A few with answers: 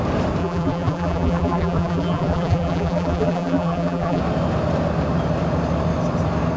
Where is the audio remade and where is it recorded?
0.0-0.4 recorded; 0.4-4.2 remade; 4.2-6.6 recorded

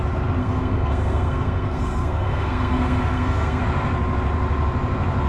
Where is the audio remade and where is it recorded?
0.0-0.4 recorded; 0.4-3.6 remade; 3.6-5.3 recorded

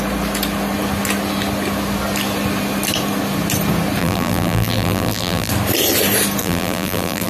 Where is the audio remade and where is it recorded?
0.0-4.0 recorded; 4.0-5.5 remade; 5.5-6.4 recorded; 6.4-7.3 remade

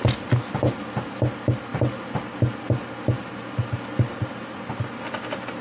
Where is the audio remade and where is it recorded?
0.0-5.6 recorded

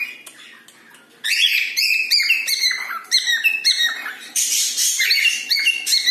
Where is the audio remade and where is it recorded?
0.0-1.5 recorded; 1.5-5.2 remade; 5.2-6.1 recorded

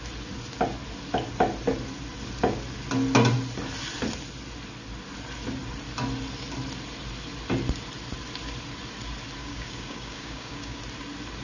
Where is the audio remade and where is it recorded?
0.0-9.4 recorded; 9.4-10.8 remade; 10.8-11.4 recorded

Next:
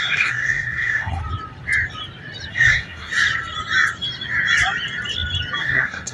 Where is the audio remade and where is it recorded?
0.0-1.2 remade; 1.2-2.5 recorded; 2.5-3.1 remade; 3.1-5.6 recorded; 5.6-6.1 remade